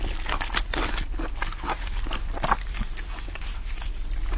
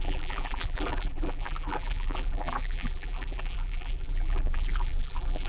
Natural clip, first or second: first